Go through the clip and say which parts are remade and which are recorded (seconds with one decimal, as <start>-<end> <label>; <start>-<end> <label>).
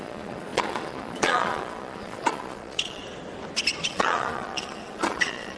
0.0-3.0 remade; 3.0-3.9 recorded; 3.9-5.6 remade